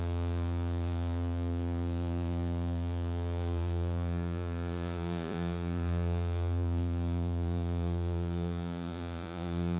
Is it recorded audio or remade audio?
remade